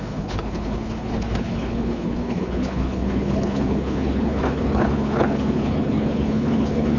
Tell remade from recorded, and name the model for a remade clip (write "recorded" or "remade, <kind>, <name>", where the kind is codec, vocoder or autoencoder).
remade, codec, HILCodec